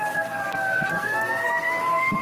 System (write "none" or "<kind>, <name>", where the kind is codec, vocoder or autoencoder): codec, SNAC